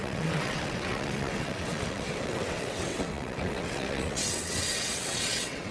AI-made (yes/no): yes